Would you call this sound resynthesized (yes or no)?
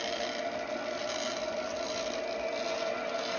no